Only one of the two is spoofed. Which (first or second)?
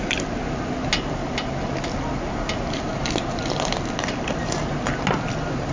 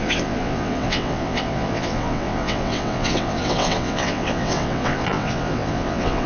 second